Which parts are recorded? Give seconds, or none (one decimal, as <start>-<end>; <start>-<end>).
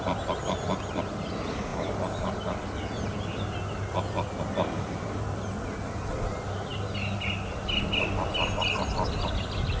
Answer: 0.0-9.8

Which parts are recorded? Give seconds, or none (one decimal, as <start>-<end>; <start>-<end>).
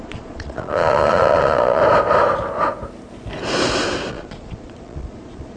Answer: 1.8-4.1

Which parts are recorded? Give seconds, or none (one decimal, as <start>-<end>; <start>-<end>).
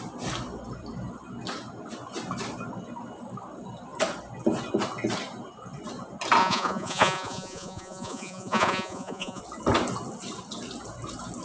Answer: 0.0-6.4; 9.4-11.4